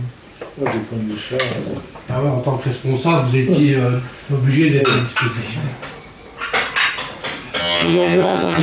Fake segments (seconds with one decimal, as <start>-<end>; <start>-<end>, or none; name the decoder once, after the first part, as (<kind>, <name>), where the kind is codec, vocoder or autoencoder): 7.6-8.6 (vocoder, HiFi-GAN)